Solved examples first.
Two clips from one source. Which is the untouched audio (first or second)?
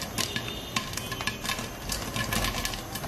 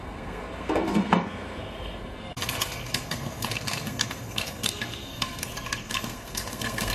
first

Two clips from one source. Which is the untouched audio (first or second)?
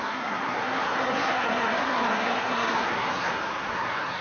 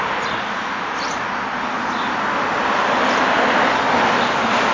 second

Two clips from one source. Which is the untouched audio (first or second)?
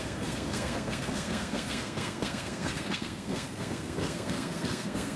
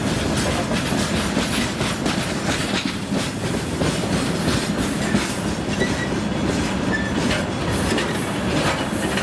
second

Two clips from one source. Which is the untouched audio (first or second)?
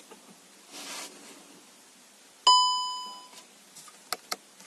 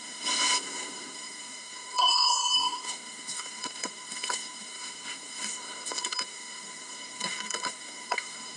first